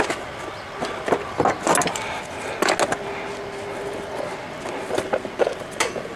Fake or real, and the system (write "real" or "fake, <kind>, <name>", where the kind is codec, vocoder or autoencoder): real